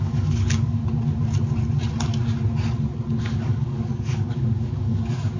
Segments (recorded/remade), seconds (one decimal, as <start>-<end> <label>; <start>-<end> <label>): 0.0-0.8 remade; 0.8-3.2 recorded; 3.2-5.4 remade